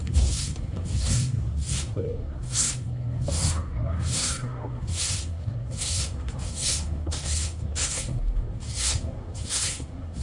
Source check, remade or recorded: remade